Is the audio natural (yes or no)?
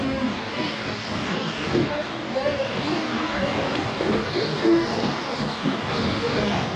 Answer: no